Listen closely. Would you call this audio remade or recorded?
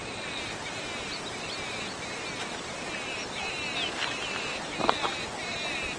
recorded